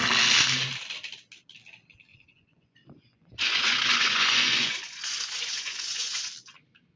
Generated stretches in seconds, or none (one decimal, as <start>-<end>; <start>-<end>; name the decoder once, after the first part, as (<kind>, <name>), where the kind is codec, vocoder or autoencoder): 2.1-6.3 (vocoder, Vocos)